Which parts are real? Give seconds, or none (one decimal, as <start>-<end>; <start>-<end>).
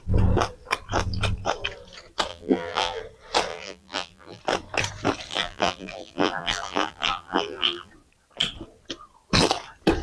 0.0-2.3; 3.0-3.5; 4.4-5.3; 7.9-10.0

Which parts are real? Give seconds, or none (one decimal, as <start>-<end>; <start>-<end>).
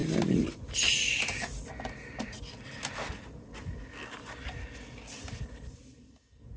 0.0-6.6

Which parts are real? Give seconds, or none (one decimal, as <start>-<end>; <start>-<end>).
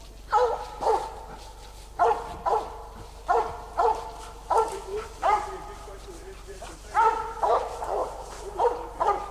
0.0-4.9; 7.5-8.0; 8.6-9.3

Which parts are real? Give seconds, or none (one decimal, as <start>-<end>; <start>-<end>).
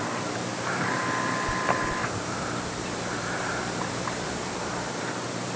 2.0-4.9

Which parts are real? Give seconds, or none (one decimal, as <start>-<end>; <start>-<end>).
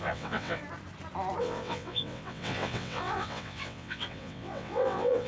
0.6-1.4